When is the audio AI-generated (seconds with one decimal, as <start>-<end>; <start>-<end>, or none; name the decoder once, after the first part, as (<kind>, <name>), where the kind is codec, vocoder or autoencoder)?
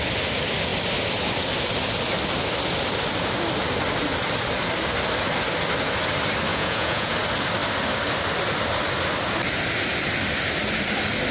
6.5-7.1 (vocoder, Vocos)